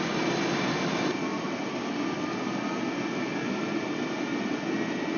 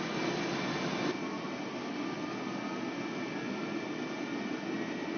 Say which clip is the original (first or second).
second